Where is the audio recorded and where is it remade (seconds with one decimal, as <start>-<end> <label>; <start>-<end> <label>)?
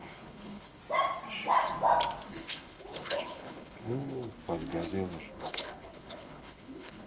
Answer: 0.0-0.8 remade; 0.8-2.3 recorded; 2.3-4.4 remade; 4.4-5.2 recorded; 5.2-7.1 remade